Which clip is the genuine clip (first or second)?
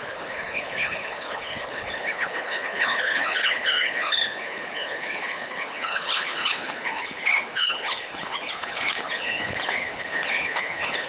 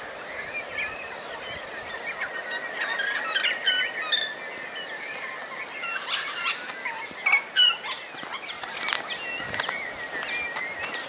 second